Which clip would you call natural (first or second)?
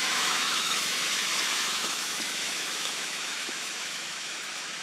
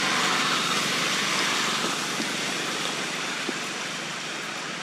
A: second